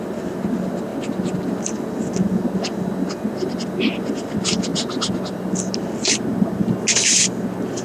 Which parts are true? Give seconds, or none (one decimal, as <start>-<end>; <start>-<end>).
0.0-7.8